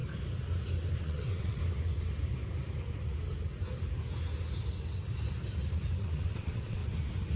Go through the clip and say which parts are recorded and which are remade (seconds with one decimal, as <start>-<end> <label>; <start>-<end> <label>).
0.0-1.0 recorded; 1.0-1.6 remade; 1.6-6.0 recorded; 6.0-6.8 remade; 6.8-7.4 recorded